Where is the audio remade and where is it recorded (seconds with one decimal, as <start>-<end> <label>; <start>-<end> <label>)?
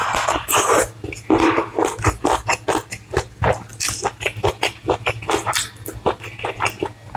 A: 0.0-7.2 recorded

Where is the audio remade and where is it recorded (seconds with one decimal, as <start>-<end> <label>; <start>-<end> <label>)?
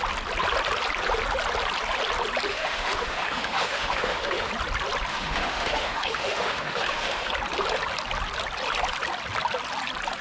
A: 0.0-2.5 recorded; 2.5-4.5 remade; 4.5-5.1 recorded; 5.1-7.3 remade; 7.3-10.2 recorded